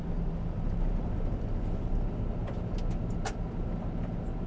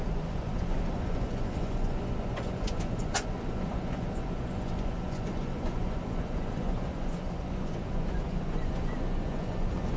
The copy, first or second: second